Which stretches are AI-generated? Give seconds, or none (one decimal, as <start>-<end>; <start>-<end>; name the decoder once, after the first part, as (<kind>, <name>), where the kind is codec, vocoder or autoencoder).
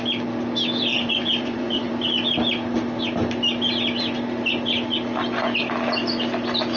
0.9-1.9 (vocoder, Vocos)